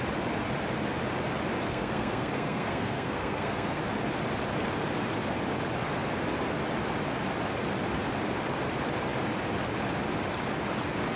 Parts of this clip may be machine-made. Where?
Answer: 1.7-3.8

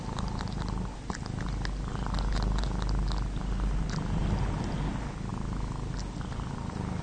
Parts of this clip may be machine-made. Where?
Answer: none

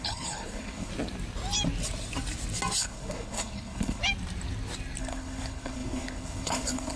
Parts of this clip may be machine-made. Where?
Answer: 0.0-0.9; 2.8-4.0; 5.0-7.0

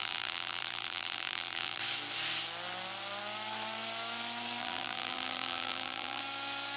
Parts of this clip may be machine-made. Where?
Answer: 0.0-1.8; 4.6-6.2

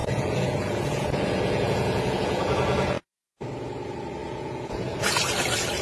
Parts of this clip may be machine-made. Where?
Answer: 0.0-3.4; 4.2-5.1

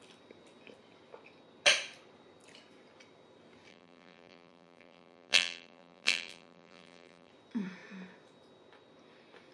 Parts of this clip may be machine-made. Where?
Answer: 3.7-7.3

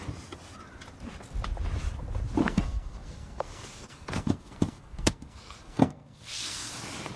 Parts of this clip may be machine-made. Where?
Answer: 2.4-6.7